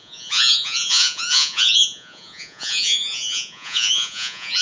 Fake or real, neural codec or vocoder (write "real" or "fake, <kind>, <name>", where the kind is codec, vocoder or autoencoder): fake, vocoder, Vocos